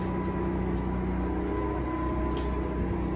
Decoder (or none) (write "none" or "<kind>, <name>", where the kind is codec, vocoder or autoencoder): none